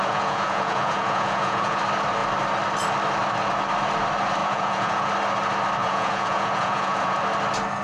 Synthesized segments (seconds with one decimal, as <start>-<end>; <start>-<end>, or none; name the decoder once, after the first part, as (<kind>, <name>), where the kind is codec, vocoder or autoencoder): 0.0-1.8 (vocoder, Vocos); 4.4-5.1; 5.8-7.2